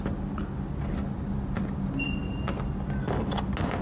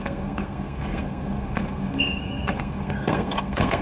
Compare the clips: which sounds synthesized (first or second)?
second